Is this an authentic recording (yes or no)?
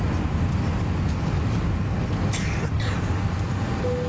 yes